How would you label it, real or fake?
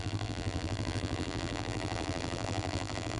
fake